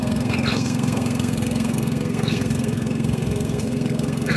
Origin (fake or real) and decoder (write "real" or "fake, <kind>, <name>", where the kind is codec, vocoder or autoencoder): fake, codec, SNAC